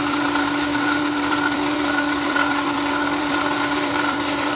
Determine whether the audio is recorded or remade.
remade